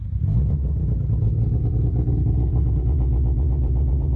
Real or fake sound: fake